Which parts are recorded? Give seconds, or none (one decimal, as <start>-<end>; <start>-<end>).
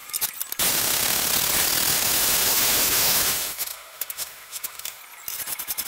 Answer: 0.0-0.7; 1.3-1.9; 5.0-5.9